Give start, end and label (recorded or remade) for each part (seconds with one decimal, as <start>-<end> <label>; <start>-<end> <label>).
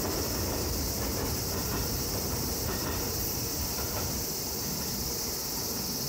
0.0-1.7 recorded; 1.7-5.4 remade; 5.4-6.1 recorded